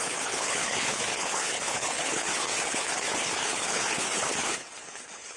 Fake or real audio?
fake